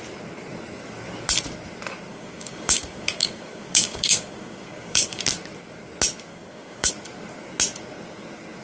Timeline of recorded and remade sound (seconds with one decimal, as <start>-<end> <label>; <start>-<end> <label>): 0.0-2.1 recorded; 2.1-5.2 remade; 5.2-6.3 recorded; 6.3-6.9 remade; 6.9-8.6 recorded